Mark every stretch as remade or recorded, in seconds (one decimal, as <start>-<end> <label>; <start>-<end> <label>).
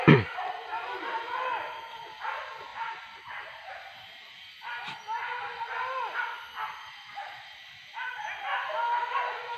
0.0-9.6 recorded